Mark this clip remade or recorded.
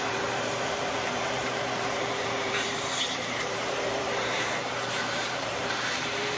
remade